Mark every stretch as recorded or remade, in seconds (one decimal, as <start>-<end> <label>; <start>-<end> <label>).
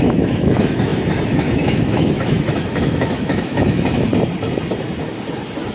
0.0-4.1 remade; 4.1-5.7 recorded